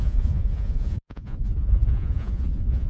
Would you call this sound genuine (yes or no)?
no